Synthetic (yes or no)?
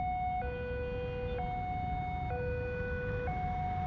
no